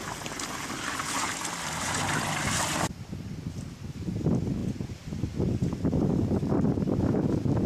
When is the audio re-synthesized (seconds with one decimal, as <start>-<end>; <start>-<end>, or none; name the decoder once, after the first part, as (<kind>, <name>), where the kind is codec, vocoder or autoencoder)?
none